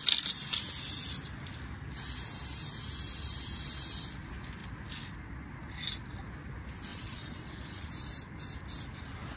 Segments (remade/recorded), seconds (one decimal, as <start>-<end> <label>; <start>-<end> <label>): 0.0-6.9 recorded; 6.9-7.9 remade; 7.9-9.4 recorded